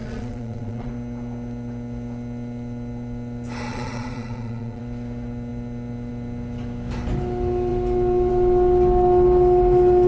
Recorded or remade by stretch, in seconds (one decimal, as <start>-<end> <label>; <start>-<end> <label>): 0.0-0.9 remade; 0.9-3.7 recorded; 3.7-4.8 remade; 4.8-10.1 recorded